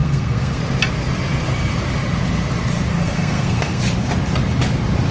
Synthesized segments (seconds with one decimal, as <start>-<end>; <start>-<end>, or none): 0.0-0.6; 2.9-3.8